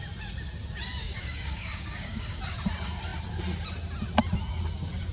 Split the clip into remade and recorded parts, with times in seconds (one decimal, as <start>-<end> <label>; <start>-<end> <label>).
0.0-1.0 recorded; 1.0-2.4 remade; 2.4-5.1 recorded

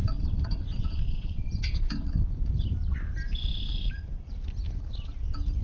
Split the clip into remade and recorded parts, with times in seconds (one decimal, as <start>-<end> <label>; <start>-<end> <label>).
0.0-2.1 remade; 2.1-5.6 recorded

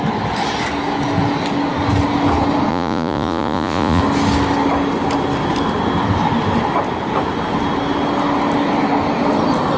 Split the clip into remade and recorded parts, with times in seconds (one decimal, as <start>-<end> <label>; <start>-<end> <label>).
0.0-2.7 recorded; 2.7-4.0 remade; 4.0-9.8 recorded

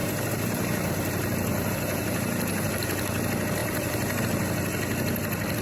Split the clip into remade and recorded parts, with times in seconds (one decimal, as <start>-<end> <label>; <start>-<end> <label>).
0.0-0.9 remade; 0.9-1.5 recorded; 1.5-2.7 remade; 2.7-3.6 recorded; 3.6-4.2 remade; 4.2-5.6 recorded

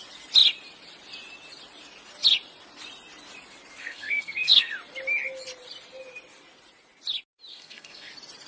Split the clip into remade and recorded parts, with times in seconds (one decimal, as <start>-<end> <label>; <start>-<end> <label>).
0.0-3.8 recorded; 3.8-4.7 remade; 4.7-7.5 recorded; 7.5-8.1 remade; 8.1-8.5 recorded

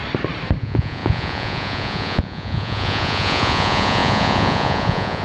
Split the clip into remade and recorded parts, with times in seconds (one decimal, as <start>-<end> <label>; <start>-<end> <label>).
0.0-0.6 recorded; 0.6-5.2 remade